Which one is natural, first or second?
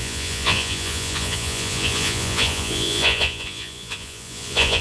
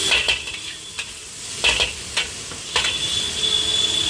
second